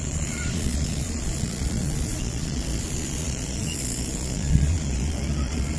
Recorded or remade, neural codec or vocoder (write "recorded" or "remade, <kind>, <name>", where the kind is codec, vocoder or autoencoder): remade, vocoder, Vocos